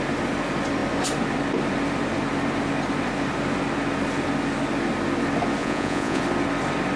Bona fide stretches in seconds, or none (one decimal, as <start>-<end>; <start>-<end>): 0.0-5.6; 6.2-7.0